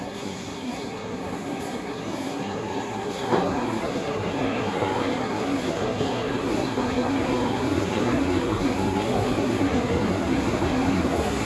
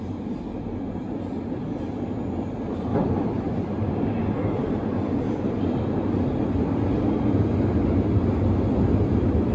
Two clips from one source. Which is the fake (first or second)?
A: first